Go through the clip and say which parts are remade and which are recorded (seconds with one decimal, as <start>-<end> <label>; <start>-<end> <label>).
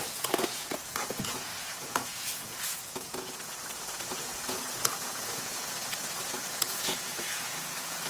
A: 0.0-8.1 remade